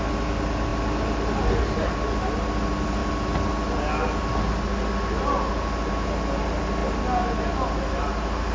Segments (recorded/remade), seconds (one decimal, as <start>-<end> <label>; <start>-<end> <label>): 0.0-8.5 recorded